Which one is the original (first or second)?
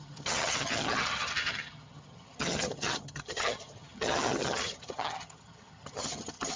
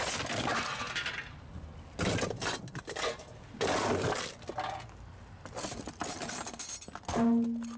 second